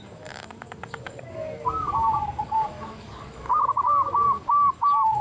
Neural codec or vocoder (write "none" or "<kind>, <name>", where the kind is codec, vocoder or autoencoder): codec, DAC